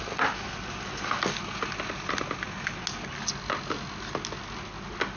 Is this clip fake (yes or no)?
no